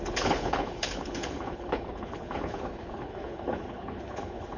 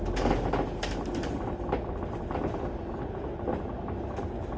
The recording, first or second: second